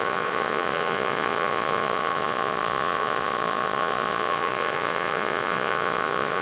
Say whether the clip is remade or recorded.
remade